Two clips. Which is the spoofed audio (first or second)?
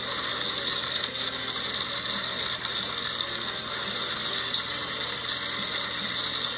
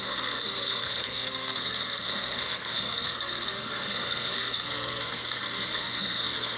second